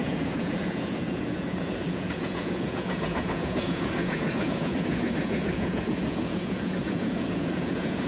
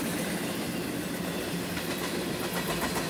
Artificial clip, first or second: first